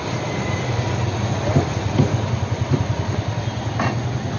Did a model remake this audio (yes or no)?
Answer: no